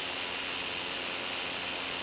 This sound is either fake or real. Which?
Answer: real